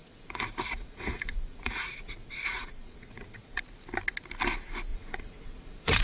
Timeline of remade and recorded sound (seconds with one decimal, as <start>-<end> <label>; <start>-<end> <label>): 0.0-3.6 remade; 3.6-4.9 recorded; 4.9-6.0 remade